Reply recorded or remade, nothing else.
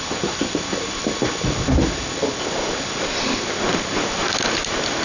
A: remade